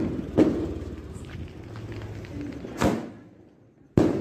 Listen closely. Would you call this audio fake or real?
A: real